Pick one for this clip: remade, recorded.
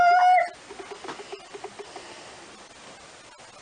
recorded